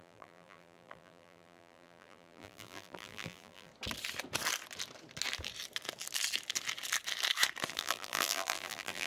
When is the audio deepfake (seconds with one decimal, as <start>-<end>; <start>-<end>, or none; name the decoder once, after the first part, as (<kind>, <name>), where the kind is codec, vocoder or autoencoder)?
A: 0.0-3.7 (vocoder, BigVGAN v2); 7.7-9.1